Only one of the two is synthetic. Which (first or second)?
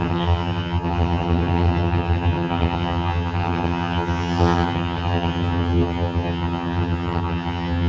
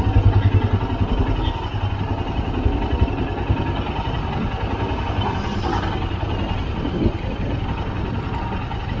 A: first